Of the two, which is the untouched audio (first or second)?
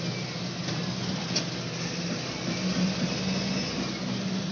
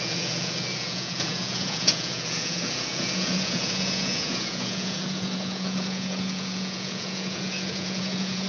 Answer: first